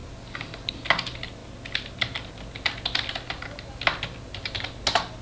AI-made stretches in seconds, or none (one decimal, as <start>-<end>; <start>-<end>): none